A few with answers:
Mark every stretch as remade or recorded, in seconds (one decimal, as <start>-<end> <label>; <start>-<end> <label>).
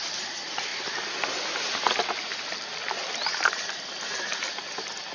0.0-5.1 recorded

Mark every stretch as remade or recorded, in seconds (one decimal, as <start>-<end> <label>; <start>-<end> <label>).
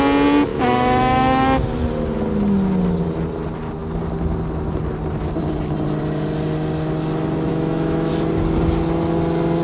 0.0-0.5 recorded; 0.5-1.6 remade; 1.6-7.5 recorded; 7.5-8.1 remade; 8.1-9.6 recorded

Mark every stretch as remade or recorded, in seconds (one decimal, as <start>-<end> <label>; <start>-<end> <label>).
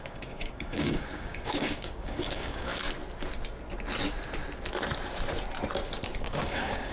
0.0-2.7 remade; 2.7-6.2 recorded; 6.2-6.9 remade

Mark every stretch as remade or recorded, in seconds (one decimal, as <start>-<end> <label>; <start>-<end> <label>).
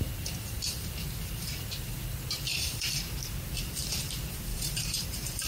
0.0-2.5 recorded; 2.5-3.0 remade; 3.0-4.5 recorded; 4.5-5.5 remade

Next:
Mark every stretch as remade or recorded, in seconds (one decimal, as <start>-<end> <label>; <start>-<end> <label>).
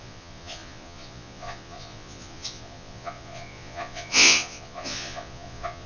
0.0-5.9 remade